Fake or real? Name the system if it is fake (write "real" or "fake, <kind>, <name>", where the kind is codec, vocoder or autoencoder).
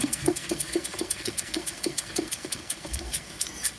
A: fake, codec, SNAC